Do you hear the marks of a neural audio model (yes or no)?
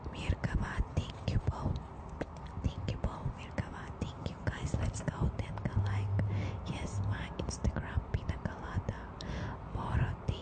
no